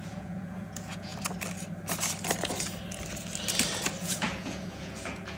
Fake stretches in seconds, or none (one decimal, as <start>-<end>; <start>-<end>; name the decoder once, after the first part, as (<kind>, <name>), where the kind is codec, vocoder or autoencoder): 0.0-1.1 (vocoder, Vocos); 4.0-5.4